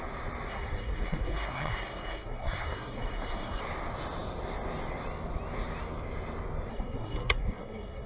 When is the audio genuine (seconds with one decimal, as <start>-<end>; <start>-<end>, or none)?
0.0-0.5; 3.6-6.7